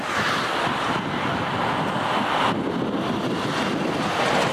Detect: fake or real real